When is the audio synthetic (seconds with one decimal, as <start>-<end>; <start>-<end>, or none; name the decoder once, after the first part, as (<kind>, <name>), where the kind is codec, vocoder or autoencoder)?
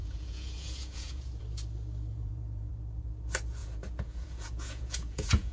0.0-1.4 (vocoder, Vocos); 2.1-2.7; 3.6-5.5